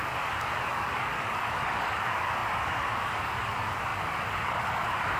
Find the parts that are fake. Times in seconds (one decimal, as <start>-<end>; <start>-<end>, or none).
0.0-5.2